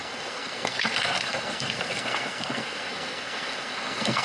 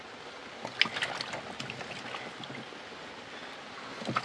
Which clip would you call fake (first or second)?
first